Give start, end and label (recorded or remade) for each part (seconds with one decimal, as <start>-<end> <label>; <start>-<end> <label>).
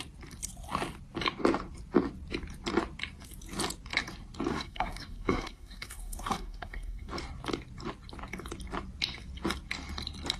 0.0-4.5 recorded; 4.5-7.1 remade; 7.1-10.4 recorded